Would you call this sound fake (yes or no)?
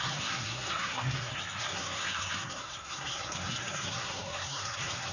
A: yes